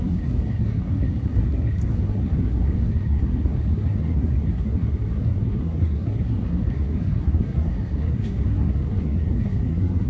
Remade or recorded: remade